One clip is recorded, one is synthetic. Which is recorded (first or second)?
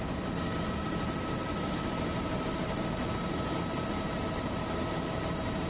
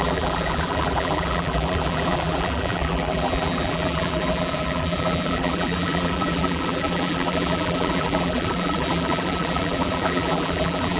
first